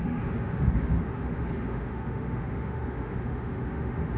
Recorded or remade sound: remade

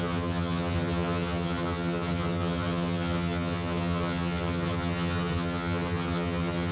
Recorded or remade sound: remade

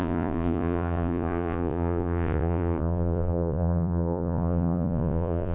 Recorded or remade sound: remade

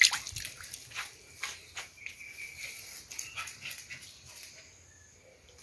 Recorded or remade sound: recorded